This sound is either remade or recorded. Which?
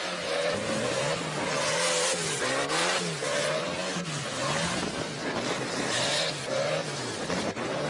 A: remade